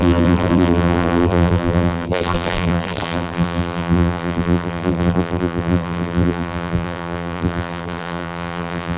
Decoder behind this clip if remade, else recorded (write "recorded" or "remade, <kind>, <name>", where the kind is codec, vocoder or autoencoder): remade, vocoder, BigVGAN v2